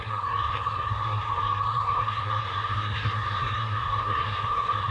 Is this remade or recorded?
remade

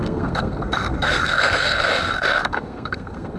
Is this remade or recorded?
remade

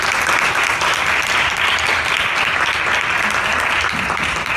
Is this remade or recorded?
recorded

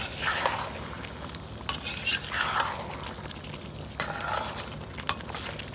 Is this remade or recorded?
recorded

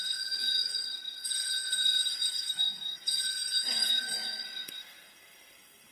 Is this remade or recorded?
remade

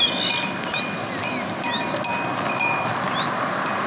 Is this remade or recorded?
recorded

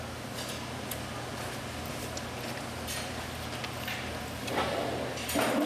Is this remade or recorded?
recorded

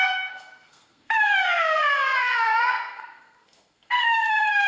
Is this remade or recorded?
remade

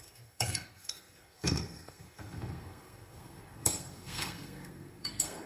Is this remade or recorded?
remade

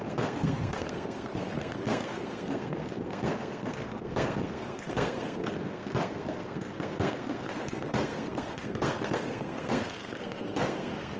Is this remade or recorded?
remade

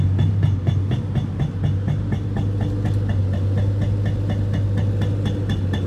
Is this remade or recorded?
recorded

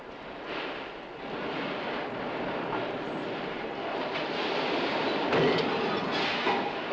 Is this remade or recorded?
recorded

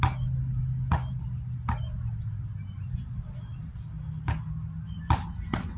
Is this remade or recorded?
recorded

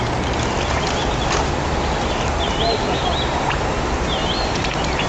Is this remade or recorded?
recorded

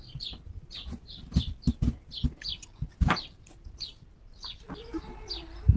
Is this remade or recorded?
recorded